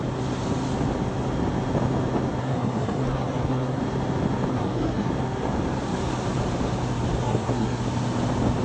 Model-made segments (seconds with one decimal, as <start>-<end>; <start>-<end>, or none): 2.4-3.8; 4.5-5.1; 7.2-7.8